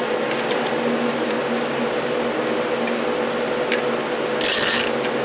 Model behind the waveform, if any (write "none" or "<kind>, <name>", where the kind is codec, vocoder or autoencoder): none